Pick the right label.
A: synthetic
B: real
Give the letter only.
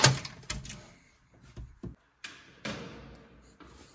B